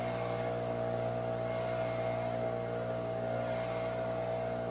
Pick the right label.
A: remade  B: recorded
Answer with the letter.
B